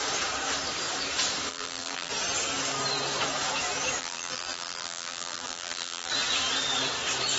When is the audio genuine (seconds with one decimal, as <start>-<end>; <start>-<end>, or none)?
0.0-1.5; 2.1-4.0; 6.1-7.4

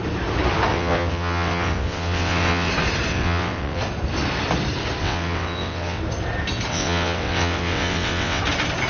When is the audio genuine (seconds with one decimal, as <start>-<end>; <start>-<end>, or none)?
0.0-0.7; 2.7-3.1; 3.8-5.0; 6.0-6.7; 8.4-8.9